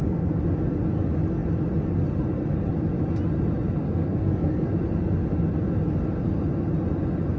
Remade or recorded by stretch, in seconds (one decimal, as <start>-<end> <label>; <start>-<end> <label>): 0.0-3.8 recorded; 3.8-4.7 remade; 4.7-7.4 recorded